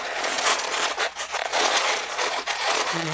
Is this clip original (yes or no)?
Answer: no